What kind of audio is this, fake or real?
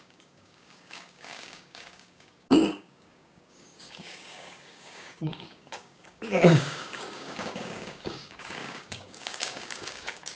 fake